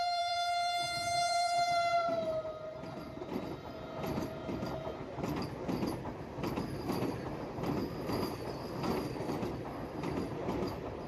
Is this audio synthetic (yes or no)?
yes